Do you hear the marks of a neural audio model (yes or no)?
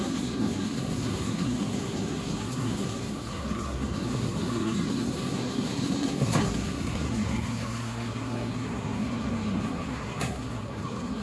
yes